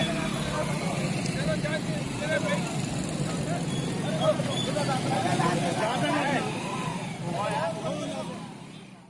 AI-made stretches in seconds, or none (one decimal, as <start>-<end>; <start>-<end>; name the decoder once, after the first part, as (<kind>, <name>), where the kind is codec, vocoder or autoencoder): none